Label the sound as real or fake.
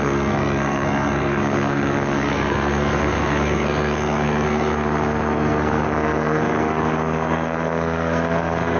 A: fake